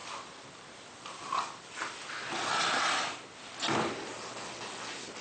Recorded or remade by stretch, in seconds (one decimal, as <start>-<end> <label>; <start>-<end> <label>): 0.0-5.2 recorded